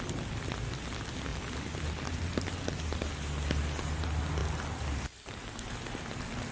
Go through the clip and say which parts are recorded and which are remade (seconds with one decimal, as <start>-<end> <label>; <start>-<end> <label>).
0.0-1.3 recorded; 1.3-3.1 remade; 3.1-6.5 recorded